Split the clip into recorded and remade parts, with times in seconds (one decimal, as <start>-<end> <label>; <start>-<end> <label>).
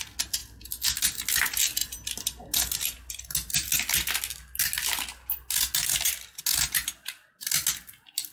0.0-8.3 recorded